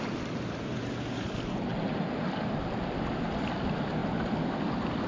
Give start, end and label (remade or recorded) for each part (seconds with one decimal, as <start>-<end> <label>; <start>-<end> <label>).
0.0-5.1 recorded